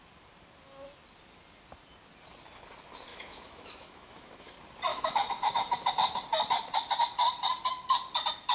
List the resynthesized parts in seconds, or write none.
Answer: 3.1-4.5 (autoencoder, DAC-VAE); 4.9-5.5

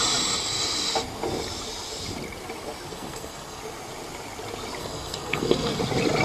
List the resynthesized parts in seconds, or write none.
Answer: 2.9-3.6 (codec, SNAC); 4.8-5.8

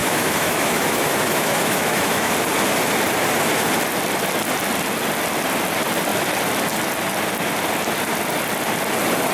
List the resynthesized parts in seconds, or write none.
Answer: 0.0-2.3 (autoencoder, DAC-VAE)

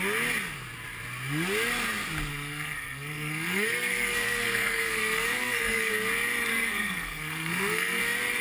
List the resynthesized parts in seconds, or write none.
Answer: 2.3-5.9 (codec, SNAC); 6.5-8.0

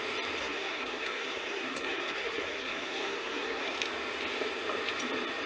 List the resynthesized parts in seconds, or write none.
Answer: 0.4-3.7 (codec, SNAC)

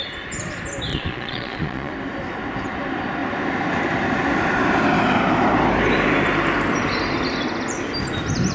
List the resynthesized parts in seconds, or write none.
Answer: 0.9-1.9 (vocoder, Vocos)

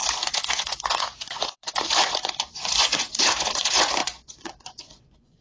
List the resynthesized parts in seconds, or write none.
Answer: 0.0-5.4 (vocoder, Vocos)